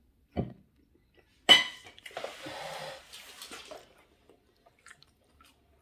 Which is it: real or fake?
real